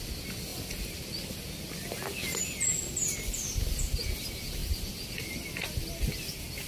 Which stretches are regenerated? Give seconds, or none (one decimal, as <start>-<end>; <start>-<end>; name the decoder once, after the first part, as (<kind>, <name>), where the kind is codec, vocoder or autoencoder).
none